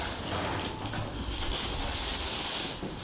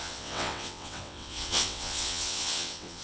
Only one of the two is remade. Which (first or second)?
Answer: second